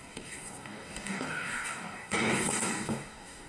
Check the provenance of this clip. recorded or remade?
remade